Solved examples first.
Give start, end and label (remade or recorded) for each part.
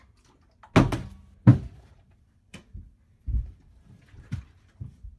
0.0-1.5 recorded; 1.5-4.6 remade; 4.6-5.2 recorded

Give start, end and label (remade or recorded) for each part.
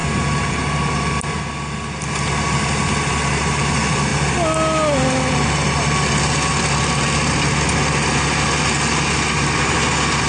0.0-10.3 recorded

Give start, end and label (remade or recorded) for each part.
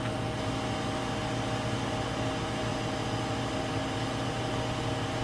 0.0-2.7 recorded; 2.7-3.8 remade; 3.8-5.2 recorded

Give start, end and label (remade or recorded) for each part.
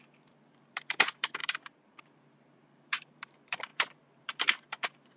0.0-5.2 remade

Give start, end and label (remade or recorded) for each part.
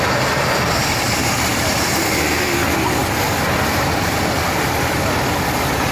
0.0-1.2 recorded; 1.2-2.0 remade; 2.0-5.9 recorded